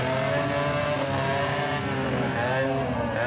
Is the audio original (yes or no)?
yes